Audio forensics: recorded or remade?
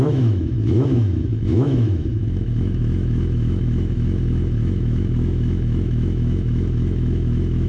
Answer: remade